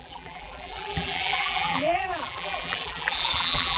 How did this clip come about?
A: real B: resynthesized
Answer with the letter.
B